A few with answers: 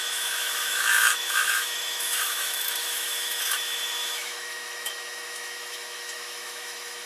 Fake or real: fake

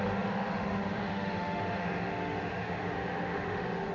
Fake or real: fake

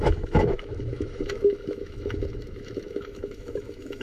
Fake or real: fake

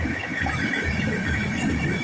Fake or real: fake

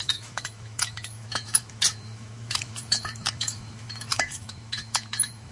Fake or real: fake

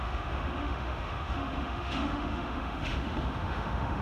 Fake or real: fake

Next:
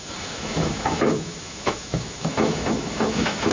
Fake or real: fake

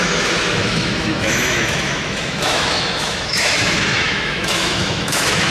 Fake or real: fake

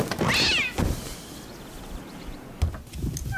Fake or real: real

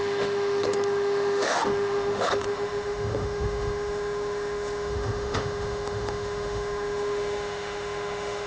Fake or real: fake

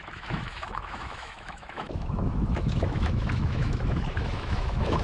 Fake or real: fake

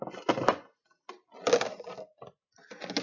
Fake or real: real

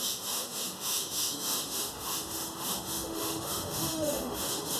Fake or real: fake